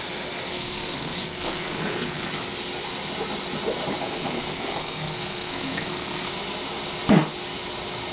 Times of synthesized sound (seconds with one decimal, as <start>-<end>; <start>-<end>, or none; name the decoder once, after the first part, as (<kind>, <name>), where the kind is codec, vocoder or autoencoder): 0.5-2.3 (codec, SNAC); 4.0-6.3